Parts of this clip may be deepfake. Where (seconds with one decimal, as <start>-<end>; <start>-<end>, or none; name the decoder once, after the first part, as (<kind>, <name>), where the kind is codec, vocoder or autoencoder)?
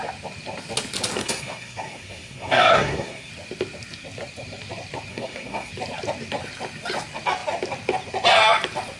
1.2-3.3 (codec, SNAC); 5.1-5.7